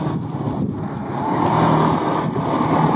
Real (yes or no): yes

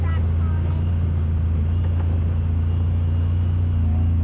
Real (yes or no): yes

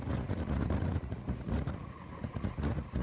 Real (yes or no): no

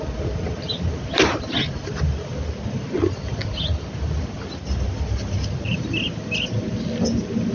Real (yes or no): no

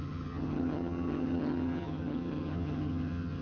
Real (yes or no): no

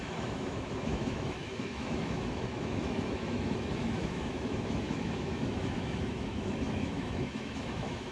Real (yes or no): no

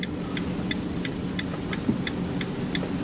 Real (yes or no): yes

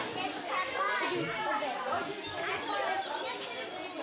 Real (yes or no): yes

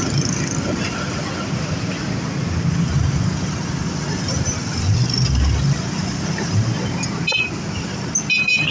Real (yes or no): yes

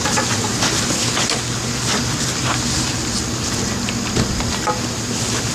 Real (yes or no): yes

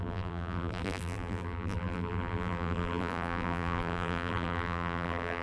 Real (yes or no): no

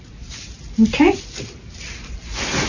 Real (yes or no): yes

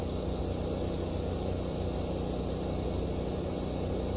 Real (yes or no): yes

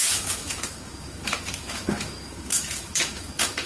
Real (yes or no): no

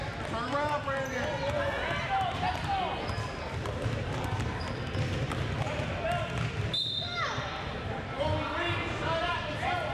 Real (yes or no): yes